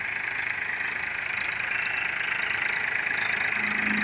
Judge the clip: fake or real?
real